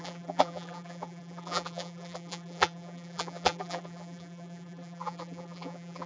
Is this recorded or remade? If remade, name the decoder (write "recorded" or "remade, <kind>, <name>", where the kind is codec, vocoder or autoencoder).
remade, vocoder, BigVGAN v2